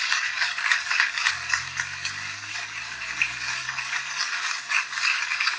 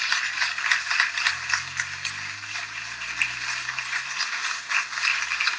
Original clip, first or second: second